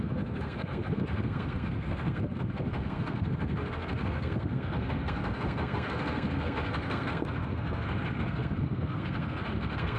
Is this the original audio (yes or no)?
no